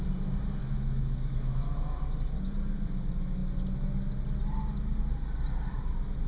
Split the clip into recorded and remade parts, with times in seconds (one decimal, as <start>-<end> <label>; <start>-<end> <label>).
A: 0.0-0.6 recorded; 0.6-2.0 remade; 2.0-6.3 recorded